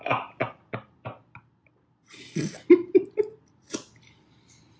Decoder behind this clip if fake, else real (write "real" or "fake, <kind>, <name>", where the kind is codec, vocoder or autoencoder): real